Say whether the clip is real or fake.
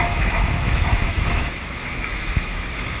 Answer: fake